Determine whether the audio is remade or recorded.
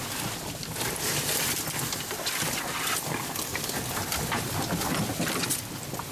recorded